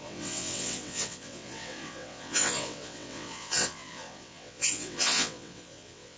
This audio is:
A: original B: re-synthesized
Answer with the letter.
B